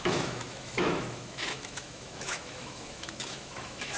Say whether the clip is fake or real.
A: fake